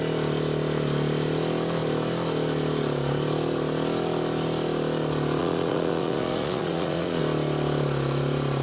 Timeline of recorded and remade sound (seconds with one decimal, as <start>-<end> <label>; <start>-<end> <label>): 0.0-5.4 recorded; 5.4-7.2 remade; 7.2-8.6 recorded